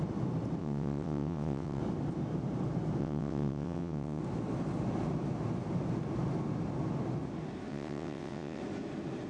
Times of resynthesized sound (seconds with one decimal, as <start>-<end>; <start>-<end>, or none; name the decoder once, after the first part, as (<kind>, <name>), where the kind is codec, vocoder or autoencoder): 0.6-1.8 (vocoder, WaveNeXt); 3.0-4.2; 7.7-8.6